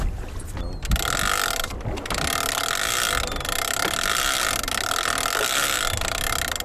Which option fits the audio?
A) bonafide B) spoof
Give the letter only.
A